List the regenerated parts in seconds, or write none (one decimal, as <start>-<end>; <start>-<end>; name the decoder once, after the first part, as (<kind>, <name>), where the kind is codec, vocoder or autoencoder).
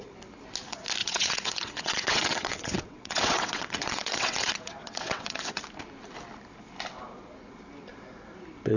1.0-5.6 (vocoder, WaveNeXt)